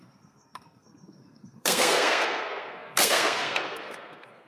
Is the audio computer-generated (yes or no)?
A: yes